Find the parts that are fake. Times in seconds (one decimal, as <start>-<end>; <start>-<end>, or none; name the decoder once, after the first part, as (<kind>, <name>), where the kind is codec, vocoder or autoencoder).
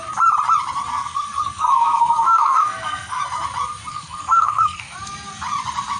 0.9-3.2 (codec, SNAC); 3.9-4.8